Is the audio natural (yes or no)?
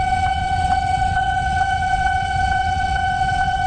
no